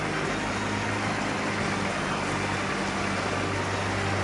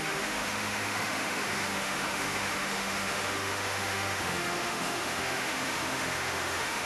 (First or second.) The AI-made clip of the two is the second